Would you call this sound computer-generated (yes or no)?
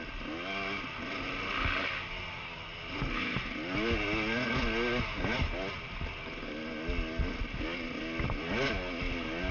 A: no